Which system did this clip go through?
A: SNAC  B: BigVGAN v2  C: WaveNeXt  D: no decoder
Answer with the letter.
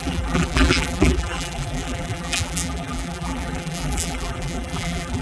B